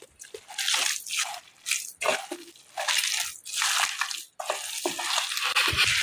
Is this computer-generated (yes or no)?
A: no